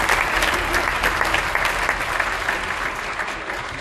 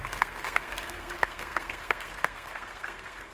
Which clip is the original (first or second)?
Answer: first